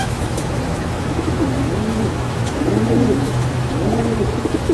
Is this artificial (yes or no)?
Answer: yes